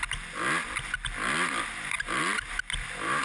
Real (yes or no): yes